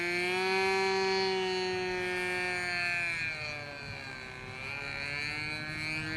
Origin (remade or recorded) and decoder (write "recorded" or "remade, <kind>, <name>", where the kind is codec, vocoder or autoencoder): recorded